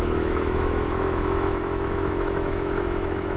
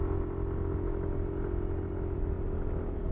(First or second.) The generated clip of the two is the first